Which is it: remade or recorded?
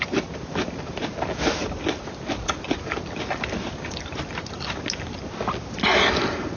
recorded